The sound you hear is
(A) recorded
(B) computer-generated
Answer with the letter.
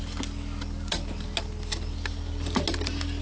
A